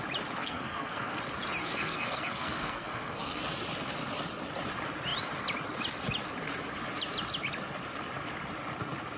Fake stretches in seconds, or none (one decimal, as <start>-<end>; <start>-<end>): 0.4-1.2; 1.6-3.4